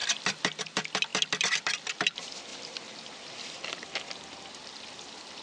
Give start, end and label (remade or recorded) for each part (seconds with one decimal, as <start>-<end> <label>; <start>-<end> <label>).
0.0-5.4 recorded